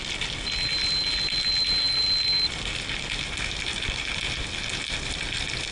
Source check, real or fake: real